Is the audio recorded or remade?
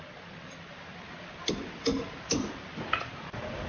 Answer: recorded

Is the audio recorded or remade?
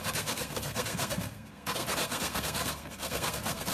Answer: remade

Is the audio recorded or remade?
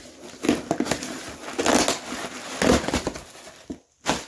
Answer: recorded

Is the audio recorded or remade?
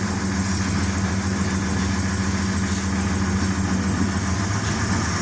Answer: recorded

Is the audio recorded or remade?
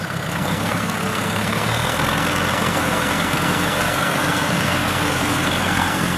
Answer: remade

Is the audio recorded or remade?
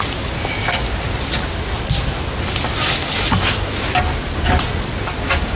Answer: recorded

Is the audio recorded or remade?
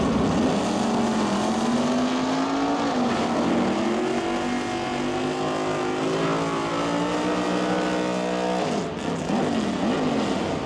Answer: recorded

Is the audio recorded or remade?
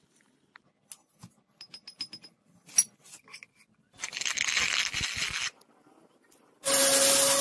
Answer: recorded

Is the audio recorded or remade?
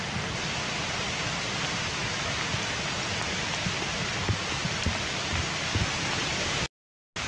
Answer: recorded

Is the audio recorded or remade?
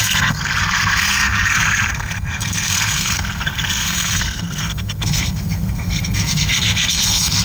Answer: remade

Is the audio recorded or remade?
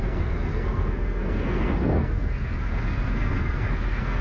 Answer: remade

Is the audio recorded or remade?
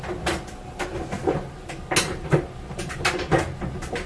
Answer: recorded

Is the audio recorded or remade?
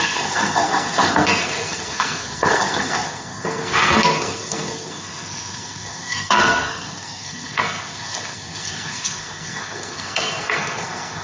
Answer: remade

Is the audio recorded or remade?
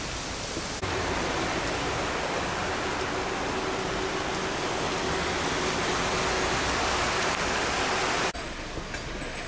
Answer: recorded